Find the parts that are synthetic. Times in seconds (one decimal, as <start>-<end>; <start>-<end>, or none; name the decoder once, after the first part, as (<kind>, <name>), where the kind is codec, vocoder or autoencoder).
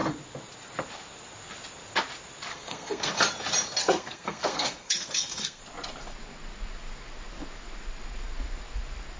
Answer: 2.5-3.1 (codec, SNAC); 3.8-5.6